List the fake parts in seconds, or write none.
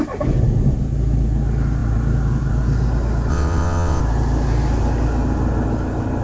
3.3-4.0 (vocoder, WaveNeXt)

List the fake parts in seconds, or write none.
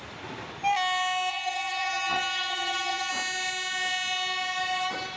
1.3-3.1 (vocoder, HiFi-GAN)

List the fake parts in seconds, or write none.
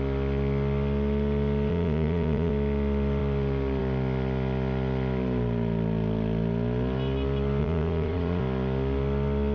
1.7-2.5 (vocoder, Vocos); 7.6-8.4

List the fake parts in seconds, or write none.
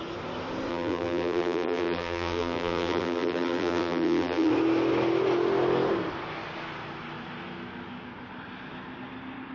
0.7-4.5 (vocoder, BigVGAN v2)